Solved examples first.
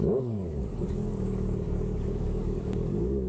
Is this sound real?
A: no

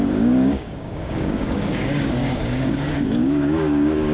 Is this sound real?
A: no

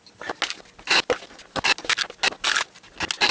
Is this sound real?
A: yes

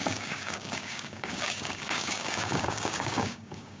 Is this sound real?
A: no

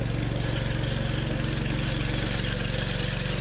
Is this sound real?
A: yes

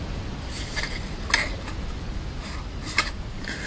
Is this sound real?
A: yes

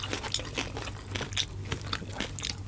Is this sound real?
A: yes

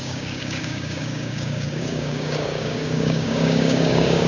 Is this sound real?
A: no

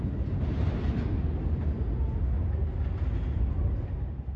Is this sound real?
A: yes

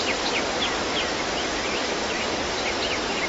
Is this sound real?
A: yes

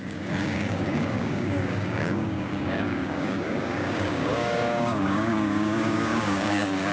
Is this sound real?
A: no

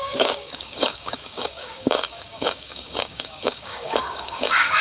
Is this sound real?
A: no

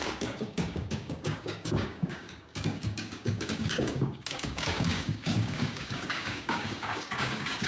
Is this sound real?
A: no